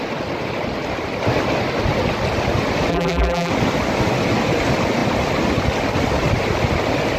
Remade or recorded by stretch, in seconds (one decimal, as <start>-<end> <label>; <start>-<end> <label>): 0.0-2.9 recorded; 2.9-3.5 remade; 3.5-7.2 recorded